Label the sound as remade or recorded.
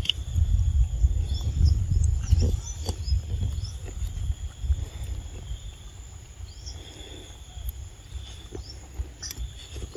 remade